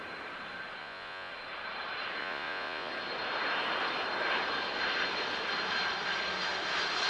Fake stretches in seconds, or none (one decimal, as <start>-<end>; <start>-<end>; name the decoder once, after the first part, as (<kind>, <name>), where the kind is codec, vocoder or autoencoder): 0.8-1.3 (vocoder, Vocos); 2.2-2.9